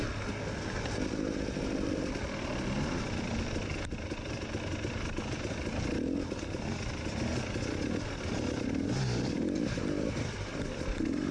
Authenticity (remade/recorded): recorded